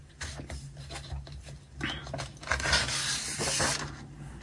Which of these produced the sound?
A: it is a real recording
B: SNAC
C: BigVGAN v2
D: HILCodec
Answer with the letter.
A